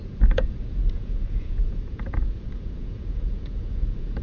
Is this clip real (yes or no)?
no